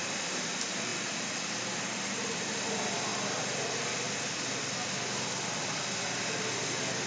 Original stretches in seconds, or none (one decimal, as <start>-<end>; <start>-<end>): 0.0-7.1